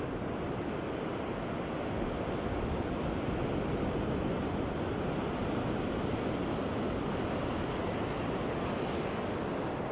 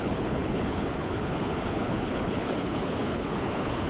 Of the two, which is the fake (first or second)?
second